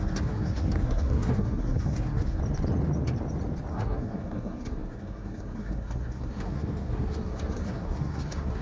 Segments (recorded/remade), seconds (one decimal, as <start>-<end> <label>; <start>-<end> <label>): 0.0-2.4 remade; 2.4-3.7 recorded; 3.7-8.6 remade